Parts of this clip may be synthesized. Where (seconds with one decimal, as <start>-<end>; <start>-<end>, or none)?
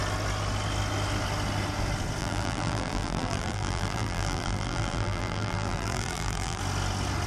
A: 2.2-6.6